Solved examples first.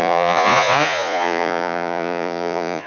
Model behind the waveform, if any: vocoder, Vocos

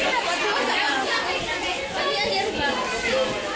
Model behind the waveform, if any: none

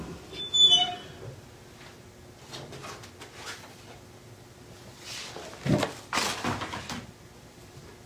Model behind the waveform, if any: none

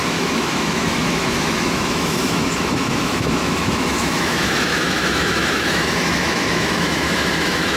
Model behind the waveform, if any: autoencoder, DAC-VAE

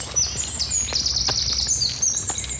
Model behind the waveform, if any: none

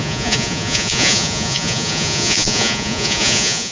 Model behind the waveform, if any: vocoder, Vocos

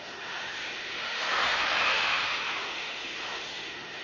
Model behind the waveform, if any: autoencoder, DAC-VAE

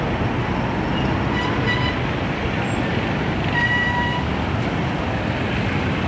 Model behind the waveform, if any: none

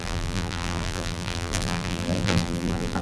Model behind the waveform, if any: vocoder, BigVGAN v2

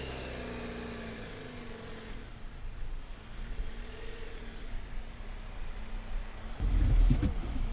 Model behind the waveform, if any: none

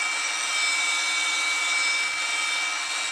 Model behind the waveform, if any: none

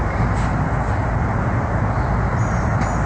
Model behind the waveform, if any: none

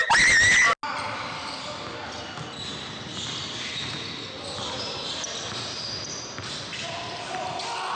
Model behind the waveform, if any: none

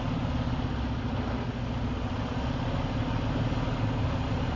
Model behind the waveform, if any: none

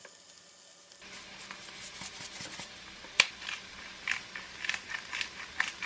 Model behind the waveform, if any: none